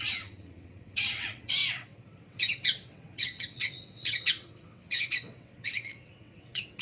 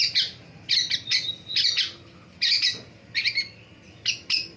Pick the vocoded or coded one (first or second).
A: first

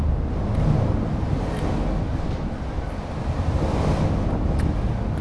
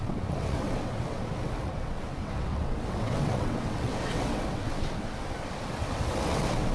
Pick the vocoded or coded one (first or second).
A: second